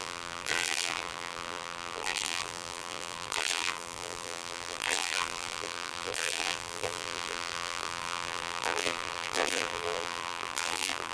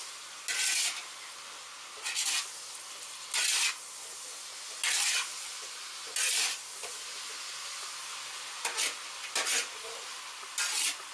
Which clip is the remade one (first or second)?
first